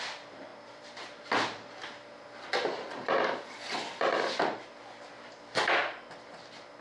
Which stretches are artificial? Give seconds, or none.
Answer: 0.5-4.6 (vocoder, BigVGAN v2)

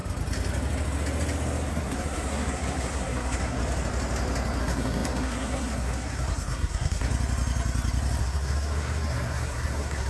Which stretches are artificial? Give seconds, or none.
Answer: 1.7-3.6 (codec, SNAC); 4.6-7.1; 8.2-10.1

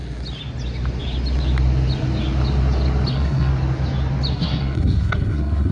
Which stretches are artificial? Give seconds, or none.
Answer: 3.1-3.5 (codec, SNAC); 4.3-5.7

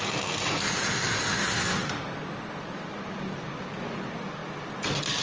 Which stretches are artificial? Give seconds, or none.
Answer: 1.4-1.9 (autoencoder, DAC-VAE)

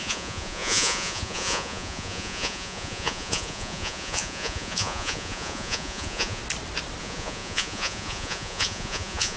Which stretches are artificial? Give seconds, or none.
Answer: 0.0-6.4 (vocoder, Vocos); 7.0-9.4